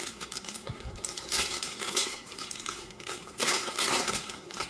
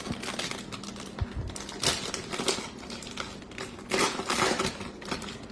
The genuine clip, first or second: second